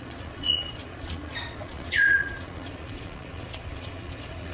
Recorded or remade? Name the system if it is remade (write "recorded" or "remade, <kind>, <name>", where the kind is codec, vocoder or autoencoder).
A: remade, vocoder, Vocos